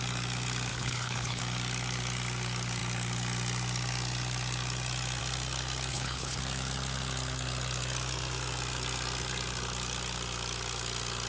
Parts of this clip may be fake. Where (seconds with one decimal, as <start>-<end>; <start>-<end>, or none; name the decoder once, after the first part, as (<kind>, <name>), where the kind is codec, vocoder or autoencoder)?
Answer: 0.7-1.4 (codec, HILCodec); 5.9-6.4